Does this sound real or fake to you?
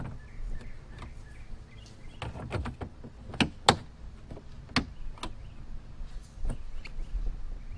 real